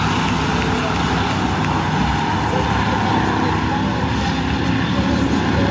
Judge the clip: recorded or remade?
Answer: recorded